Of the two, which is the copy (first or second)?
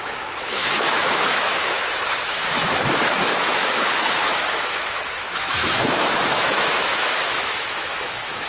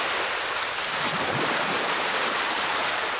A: first